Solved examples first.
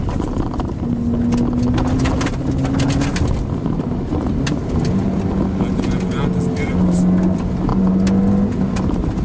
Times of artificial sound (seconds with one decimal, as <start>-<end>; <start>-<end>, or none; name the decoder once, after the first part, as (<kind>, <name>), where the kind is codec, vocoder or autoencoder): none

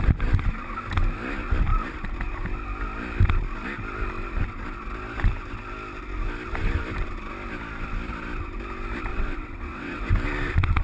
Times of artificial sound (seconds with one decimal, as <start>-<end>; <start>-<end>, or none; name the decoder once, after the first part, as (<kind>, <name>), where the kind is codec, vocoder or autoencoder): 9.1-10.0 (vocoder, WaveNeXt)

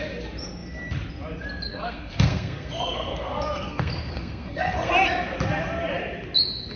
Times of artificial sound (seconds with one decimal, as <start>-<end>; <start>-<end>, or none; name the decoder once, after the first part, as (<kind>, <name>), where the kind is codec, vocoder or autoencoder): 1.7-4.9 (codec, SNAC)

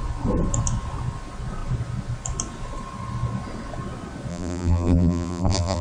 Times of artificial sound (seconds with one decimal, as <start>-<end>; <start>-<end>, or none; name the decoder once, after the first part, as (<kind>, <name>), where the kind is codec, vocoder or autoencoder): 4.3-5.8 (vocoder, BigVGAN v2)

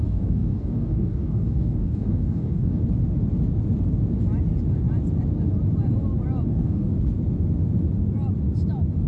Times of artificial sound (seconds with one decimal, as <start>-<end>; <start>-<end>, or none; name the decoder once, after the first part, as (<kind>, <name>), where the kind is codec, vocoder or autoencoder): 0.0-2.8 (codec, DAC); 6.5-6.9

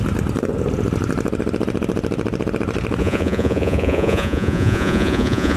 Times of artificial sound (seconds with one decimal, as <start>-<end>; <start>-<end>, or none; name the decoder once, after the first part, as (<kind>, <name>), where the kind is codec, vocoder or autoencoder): 3.0-5.6 (vocoder, Vocos)

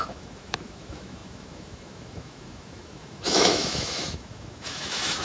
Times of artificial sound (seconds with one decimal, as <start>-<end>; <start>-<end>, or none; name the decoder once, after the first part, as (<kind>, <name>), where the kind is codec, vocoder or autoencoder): 0.0-5.2 (autoencoder, DAC-VAE)